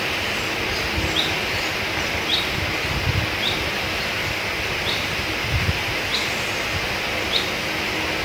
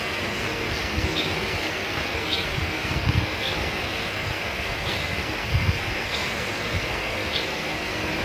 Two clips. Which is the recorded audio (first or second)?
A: first